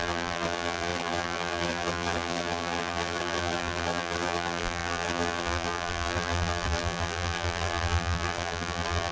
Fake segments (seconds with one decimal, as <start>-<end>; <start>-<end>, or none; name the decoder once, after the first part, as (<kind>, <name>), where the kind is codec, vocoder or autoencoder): 0.0-9.1 (vocoder, BigVGAN v2)